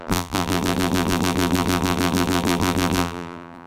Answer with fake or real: fake